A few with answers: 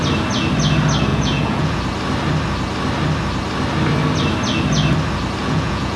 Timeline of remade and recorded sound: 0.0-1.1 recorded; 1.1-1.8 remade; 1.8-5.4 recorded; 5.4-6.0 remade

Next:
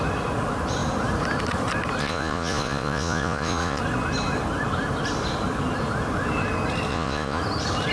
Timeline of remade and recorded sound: 0.0-2.0 recorded; 2.0-3.8 remade; 3.8-6.9 recorded; 6.9-7.4 remade; 7.4-7.9 recorded

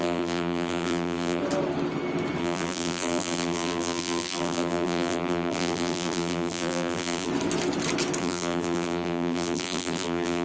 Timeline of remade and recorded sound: 0.0-1.4 remade; 1.4-2.4 recorded; 2.4-7.3 remade; 7.3-8.2 recorded; 8.2-10.4 remade

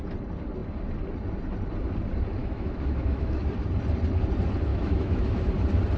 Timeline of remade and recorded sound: 0.0-2.4 recorded; 2.4-3.4 remade; 3.4-4.7 recorded; 4.7-5.5 remade; 5.5-6.0 recorded